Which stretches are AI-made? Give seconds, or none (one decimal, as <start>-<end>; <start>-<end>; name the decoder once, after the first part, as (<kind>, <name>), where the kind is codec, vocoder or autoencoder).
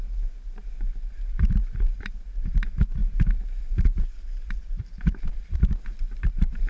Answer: 0.8-6.7 (vocoder, BigVGAN v2)